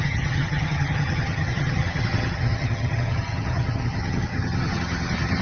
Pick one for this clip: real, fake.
fake